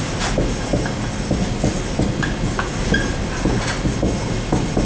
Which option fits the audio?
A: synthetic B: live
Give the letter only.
B